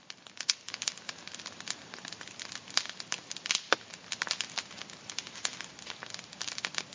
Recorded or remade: recorded